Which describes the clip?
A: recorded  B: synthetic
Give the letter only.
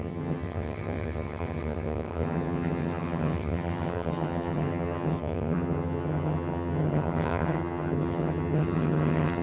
B